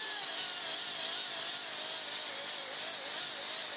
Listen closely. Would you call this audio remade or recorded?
recorded